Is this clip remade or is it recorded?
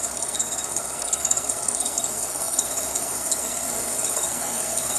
remade